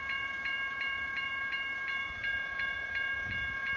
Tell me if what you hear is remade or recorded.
remade